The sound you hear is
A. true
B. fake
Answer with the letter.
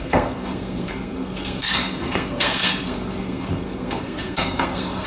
B